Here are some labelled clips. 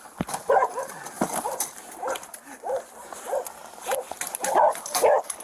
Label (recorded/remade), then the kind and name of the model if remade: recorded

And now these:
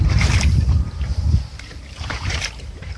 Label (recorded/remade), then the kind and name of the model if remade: remade, vocoder, BigVGAN v2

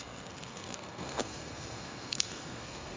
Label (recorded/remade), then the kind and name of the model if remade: remade, codec, SNAC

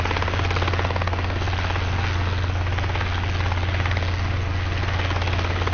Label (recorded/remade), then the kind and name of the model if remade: recorded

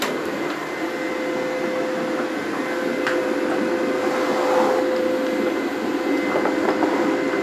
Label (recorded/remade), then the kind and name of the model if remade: recorded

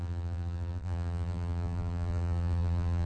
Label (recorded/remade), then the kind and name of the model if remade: remade, vocoder, BigVGAN v2